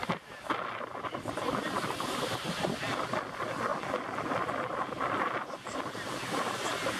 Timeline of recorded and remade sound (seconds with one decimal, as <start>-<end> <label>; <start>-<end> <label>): 0.0-7.0 recorded